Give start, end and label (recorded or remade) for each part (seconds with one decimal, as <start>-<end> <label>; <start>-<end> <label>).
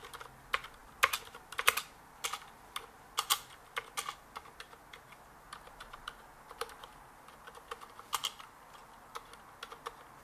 0.0-10.2 recorded